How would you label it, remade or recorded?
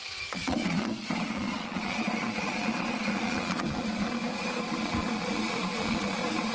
remade